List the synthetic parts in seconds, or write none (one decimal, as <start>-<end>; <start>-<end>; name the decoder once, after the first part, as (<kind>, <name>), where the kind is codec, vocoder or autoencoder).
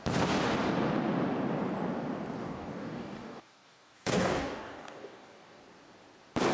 2.4-5.6 (codec, DAC)